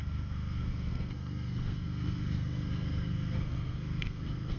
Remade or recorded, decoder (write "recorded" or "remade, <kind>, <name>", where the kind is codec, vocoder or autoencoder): remade, codec, SNAC